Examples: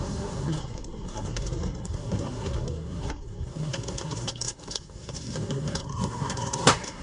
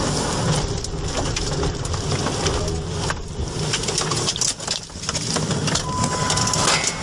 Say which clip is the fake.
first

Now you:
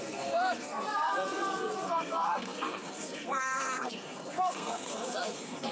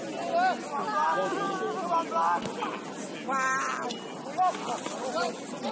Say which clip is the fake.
first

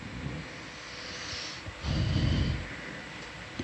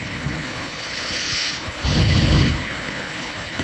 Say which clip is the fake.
second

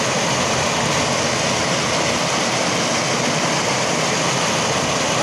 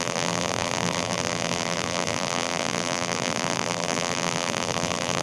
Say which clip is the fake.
second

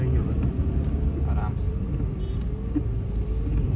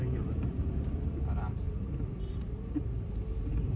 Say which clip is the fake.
second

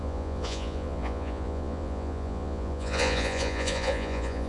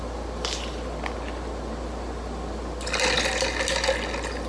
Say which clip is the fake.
first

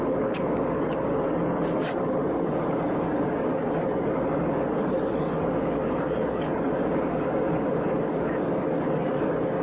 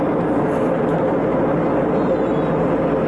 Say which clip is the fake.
first